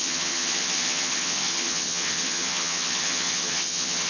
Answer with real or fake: fake